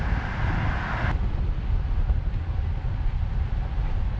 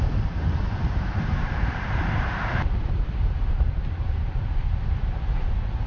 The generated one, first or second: second